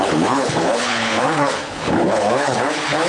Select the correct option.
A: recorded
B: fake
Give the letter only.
B